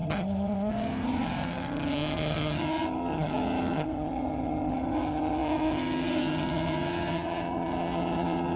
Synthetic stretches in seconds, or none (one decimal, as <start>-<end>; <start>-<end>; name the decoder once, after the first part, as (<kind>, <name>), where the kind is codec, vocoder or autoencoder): 0.0-8.6 (vocoder, HiFi-GAN)